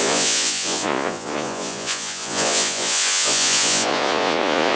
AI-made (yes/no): yes